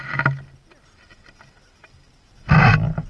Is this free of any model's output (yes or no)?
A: yes